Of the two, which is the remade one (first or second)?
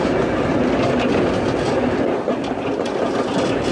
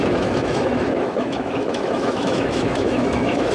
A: second